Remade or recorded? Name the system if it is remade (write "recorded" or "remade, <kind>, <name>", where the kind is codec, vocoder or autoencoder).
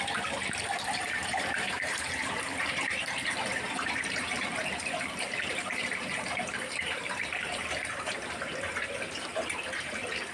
remade, vocoder, BigVGAN v2